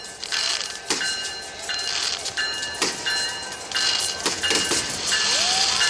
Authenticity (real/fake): real